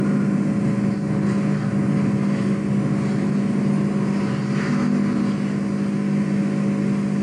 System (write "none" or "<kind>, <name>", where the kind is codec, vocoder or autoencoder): none